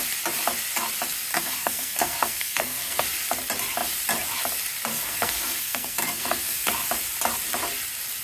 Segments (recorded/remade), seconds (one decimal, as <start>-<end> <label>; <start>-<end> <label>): 0.0-1.3 recorded; 1.3-3.0 remade; 3.0-4.9 recorded; 4.9-6.7 remade; 6.7-8.2 recorded